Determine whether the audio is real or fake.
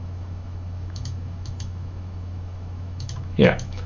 fake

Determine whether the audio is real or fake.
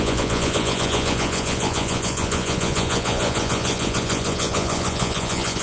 fake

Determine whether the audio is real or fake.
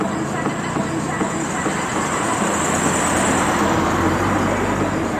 real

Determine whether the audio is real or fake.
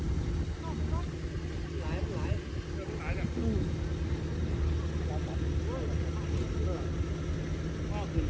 real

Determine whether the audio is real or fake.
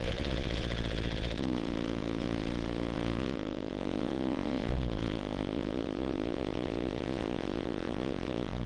fake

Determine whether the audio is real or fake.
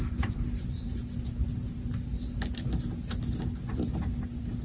real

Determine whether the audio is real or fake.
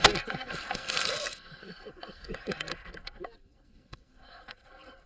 fake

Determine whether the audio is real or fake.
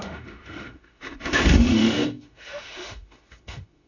fake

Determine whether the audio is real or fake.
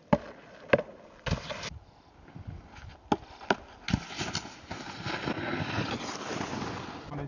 real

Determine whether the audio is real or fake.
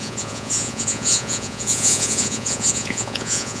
fake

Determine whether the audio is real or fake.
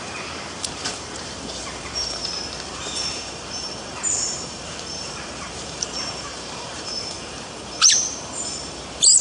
fake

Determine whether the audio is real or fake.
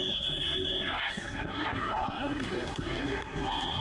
fake